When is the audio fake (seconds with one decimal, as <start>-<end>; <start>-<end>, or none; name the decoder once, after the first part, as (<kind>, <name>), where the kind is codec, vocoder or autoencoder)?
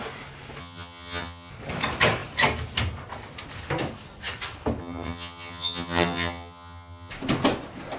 0.6-1.5 (vocoder, HiFi-GAN); 4.8-7.1